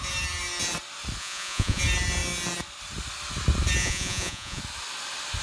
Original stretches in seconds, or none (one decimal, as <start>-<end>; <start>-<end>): 0.0-1.2; 1.8-3.8; 4.6-5.4